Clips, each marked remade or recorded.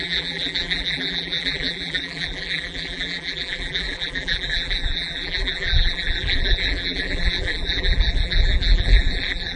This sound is remade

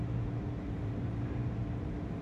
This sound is remade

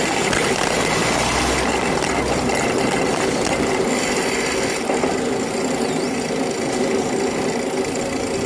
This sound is recorded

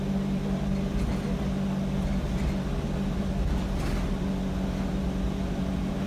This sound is recorded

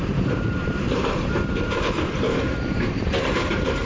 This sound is remade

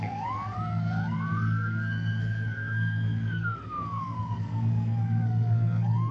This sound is remade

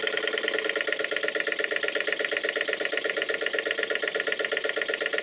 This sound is recorded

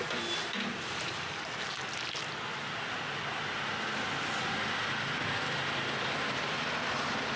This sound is recorded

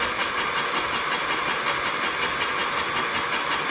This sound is recorded